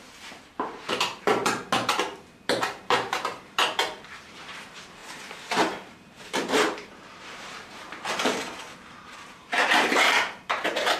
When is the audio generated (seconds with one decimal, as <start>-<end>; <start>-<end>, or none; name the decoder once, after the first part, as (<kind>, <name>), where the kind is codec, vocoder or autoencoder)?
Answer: 0.0-1.4 (vocoder, BigVGAN v2); 2.6-11.0